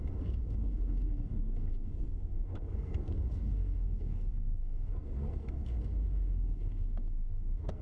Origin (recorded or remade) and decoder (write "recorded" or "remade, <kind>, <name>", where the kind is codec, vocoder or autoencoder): remade, codec, SNAC